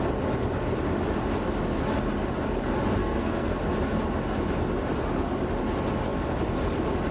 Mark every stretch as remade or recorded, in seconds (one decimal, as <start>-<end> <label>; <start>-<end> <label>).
0.0-3.0 recorded; 3.0-3.6 remade; 3.6-7.1 recorded